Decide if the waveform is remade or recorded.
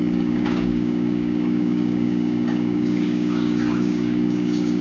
remade